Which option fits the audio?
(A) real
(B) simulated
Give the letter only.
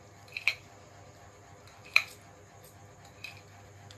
B